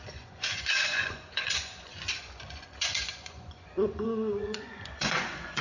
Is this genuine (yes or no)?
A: no